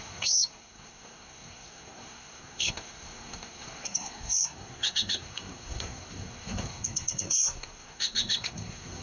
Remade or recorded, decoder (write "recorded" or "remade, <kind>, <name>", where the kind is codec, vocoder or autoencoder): remade, codec, SNAC